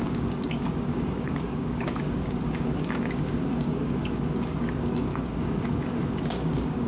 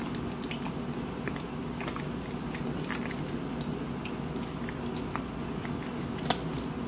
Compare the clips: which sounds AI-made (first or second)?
first